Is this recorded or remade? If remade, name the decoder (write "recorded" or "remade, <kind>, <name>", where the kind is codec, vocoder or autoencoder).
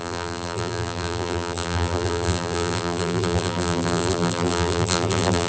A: remade, vocoder, BigVGAN v2